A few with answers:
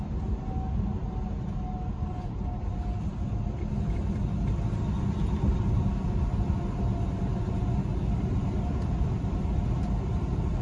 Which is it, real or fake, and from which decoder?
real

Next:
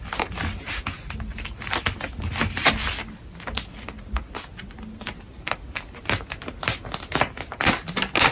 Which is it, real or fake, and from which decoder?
real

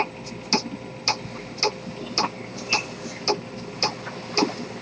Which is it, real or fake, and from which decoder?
real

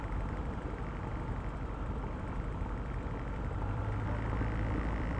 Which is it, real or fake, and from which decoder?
fake, vocoder, BigVGAN v2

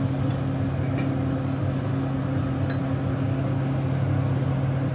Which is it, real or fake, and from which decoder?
real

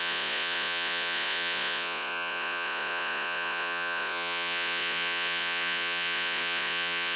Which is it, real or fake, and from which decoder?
fake, vocoder, Vocos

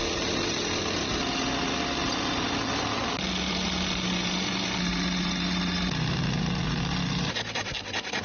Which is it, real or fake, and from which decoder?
real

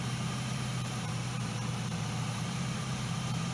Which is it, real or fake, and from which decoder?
fake, vocoder, BigVGAN v2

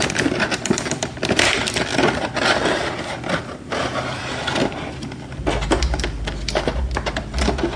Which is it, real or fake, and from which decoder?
real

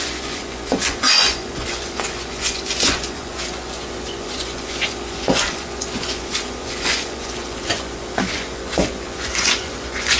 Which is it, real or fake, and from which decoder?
fake, vocoder, Vocos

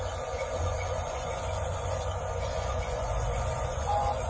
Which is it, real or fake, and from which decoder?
fake, vocoder, Vocos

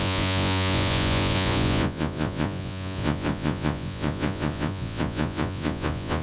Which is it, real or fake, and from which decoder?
fake, vocoder, Vocos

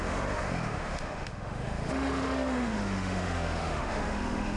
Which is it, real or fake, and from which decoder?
fake, autoencoder, DAC-VAE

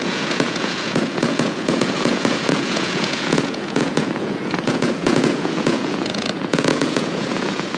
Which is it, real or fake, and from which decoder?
fake, vocoder, Vocos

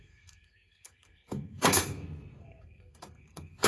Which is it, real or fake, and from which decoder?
fake, codec, SNAC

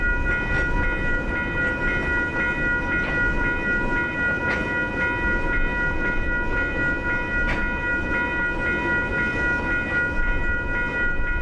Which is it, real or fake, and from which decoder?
real